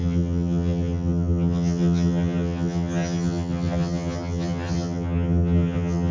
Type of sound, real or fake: fake